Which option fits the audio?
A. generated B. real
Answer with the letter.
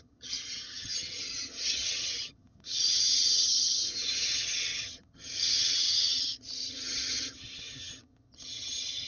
A